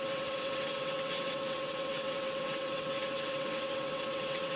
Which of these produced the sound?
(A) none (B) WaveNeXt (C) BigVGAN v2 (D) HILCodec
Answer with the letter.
B